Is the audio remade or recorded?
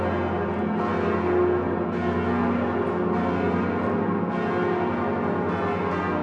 recorded